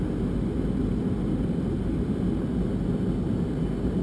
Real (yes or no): yes